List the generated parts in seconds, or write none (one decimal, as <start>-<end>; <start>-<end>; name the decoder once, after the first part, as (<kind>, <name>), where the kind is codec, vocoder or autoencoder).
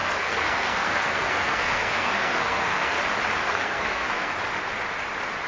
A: 0.0-3.0 (codec, SNAC); 3.4-4.3